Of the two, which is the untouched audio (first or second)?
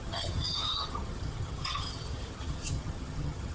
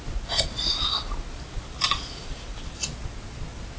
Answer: second